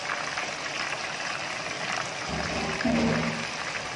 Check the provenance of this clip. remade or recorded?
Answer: recorded